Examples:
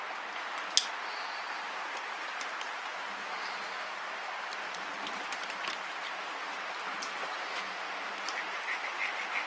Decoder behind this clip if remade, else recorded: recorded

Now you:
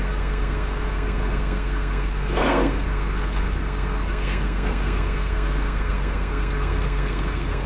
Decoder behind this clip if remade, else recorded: remade, codec, SNAC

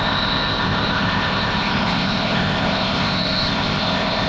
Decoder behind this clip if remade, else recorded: remade, codec, ZipCodec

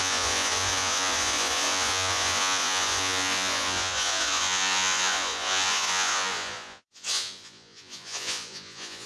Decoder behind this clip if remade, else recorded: remade, vocoder, Vocos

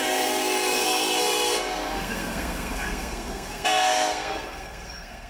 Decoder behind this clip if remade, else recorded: remade, codec, SNAC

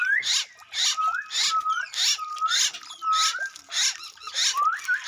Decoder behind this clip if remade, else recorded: recorded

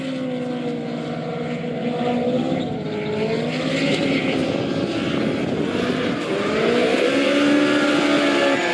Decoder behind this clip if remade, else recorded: recorded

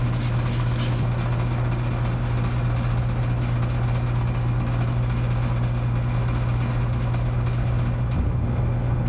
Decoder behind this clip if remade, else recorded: recorded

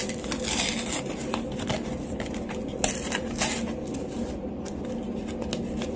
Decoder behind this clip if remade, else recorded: recorded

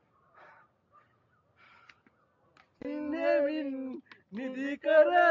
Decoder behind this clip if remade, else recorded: recorded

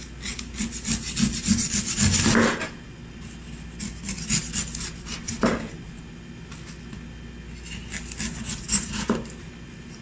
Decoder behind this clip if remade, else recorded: recorded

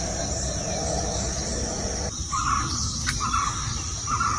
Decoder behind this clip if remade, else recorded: remade, vocoder, BigVGAN v2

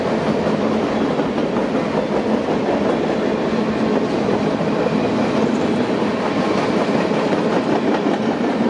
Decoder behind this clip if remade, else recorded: recorded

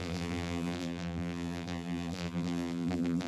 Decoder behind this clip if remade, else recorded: remade, vocoder, BigVGAN v2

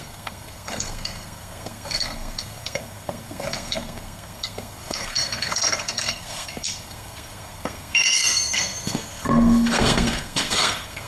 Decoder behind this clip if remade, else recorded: remade, codec, SNAC